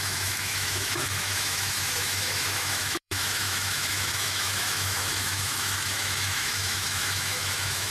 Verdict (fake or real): fake